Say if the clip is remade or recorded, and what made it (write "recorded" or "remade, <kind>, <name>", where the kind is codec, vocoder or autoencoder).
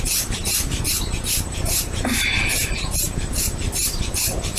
remade, vocoder, BigVGAN v2